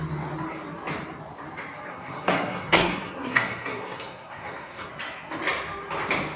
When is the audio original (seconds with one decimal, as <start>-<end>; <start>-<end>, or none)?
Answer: 0.0-1.9; 4.9-6.4